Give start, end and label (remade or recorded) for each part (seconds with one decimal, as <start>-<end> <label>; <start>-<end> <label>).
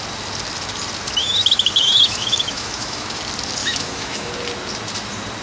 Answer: 0.0-1.2 recorded; 1.2-3.2 remade; 3.2-3.6 recorded; 3.6-4.3 remade; 4.3-5.4 recorded